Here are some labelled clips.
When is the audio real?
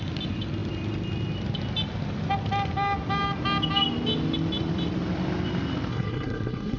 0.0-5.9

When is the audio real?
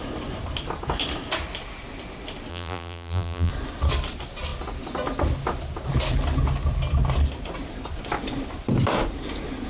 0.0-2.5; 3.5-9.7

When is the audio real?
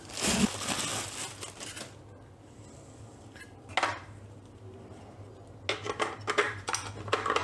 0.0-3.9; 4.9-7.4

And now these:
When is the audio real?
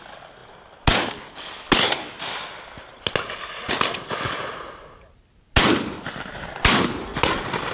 0.0-7.7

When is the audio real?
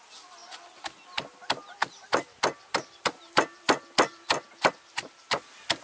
0.0-5.8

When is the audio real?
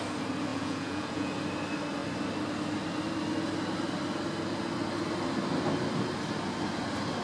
0.0-0.5; 1.3-7.2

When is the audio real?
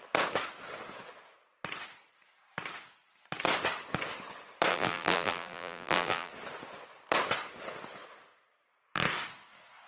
0.0-4.7; 6.3-9.9